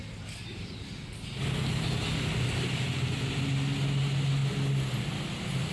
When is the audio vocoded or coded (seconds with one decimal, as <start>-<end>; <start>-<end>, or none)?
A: none